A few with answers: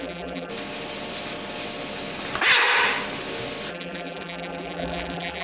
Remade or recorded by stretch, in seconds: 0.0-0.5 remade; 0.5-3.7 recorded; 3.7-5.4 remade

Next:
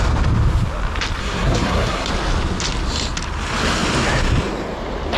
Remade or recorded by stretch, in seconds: 0.0-1.2 recorded; 1.2-2.1 remade; 2.1-5.2 recorded

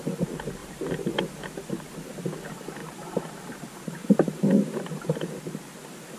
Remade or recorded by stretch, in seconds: 0.0-2.8 recorded; 2.8-3.4 remade; 3.4-4.0 recorded; 4.0-5.4 remade; 5.4-6.2 recorded

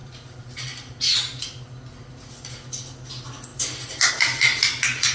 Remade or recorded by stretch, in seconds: 0.0-5.1 recorded

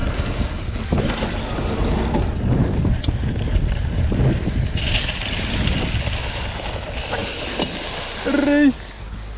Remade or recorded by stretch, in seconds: 0.0-9.4 recorded